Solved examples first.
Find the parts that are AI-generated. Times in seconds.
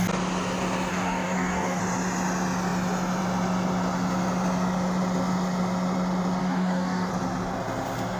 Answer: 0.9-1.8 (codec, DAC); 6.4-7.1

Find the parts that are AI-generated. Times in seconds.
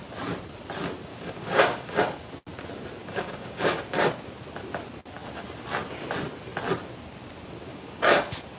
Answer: 1.1-2.0 (codec, DAC); 3.0-3.8; 7.7-8.2